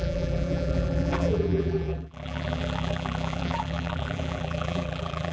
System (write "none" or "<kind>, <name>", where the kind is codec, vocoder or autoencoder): vocoder, BigVGAN v2